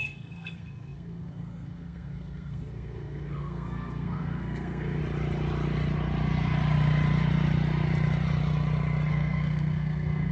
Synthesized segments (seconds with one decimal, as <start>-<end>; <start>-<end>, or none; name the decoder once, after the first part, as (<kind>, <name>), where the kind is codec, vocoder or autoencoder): 0.0-5.0 (codec, SNAC); 9.1-10.3